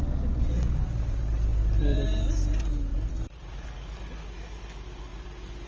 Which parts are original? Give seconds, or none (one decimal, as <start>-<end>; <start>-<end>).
0.0-5.7